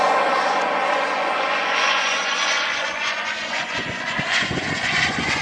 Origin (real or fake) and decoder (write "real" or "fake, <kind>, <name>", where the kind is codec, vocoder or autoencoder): fake, vocoder, Vocos